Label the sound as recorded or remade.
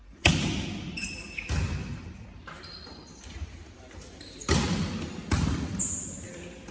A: recorded